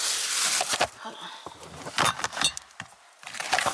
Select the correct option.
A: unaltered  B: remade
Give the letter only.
A